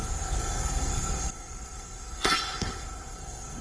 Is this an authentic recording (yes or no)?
no